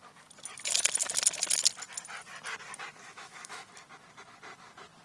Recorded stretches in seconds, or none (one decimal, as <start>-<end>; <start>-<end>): 0.0-3.0; 3.7-5.0